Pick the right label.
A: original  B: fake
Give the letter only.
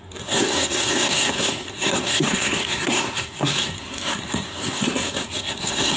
B